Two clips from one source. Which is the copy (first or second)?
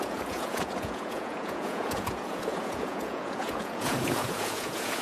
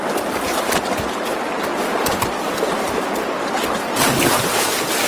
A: first